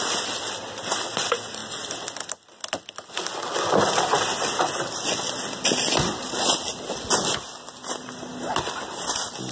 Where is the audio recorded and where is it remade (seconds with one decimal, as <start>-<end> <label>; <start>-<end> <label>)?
0.0-9.5 recorded